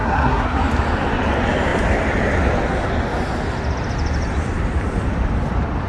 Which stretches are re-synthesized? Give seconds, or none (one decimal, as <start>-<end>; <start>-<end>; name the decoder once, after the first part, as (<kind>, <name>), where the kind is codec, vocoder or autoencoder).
0.0-0.6 (codec, SNAC)